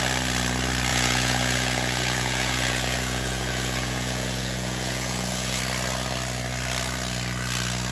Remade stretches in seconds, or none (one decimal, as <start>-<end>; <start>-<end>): 0.9-5.6